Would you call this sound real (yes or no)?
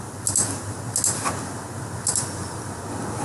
yes